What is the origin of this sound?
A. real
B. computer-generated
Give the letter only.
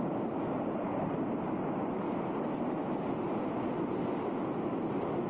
A